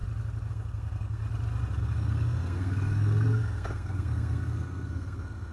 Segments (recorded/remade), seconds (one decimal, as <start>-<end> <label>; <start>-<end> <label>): 0.0-0.5 recorded; 0.5-1.2 remade; 1.2-1.8 recorded; 1.8-5.5 remade